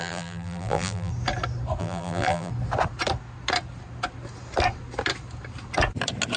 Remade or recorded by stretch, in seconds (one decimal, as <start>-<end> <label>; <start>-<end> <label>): 0.0-1.1 remade; 1.1-1.8 recorded; 1.8-2.5 remade; 2.5-6.4 recorded